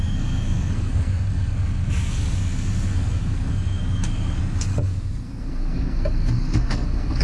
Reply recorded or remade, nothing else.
remade